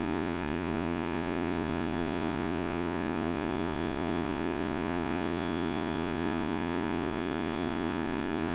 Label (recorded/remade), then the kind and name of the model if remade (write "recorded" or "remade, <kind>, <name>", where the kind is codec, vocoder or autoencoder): remade, vocoder, Vocos